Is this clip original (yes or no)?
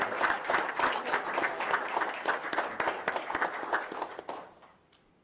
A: yes